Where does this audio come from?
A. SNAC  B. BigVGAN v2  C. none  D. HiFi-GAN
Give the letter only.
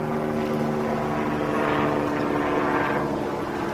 C